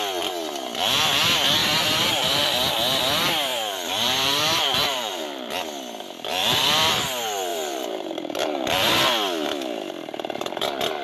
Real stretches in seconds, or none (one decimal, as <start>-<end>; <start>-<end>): 0.0-1.6; 2.4-3.5; 5.5-6.4; 6.9-7.5; 9.0-11.0